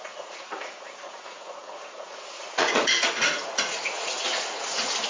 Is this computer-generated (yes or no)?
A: yes